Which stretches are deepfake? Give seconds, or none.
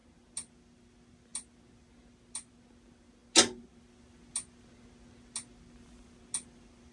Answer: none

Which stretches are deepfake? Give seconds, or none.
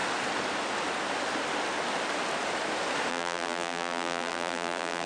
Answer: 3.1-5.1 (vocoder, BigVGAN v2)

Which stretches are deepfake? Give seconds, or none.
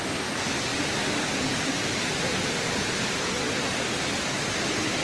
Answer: 0.7-2.9 (vocoder, BigVGAN v2)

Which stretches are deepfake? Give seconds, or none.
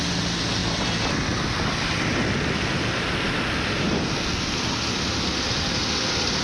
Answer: none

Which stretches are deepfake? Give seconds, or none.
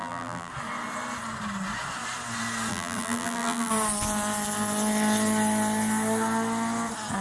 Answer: 0.0-0.5 (vocoder, BigVGAN v2); 2.7-3.7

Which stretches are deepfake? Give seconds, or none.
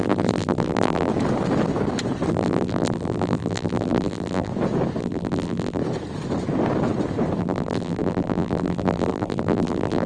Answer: 0.0-1.1 (vocoder, BigVGAN v2); 2.3-4.5; 5.0-5.8; 7.4-10.1